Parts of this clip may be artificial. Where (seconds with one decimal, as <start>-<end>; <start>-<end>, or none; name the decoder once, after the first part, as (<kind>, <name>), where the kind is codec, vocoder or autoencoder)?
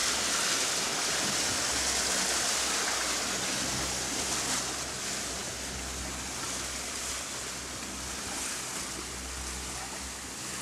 none